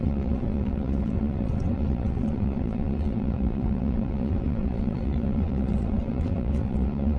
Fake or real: fake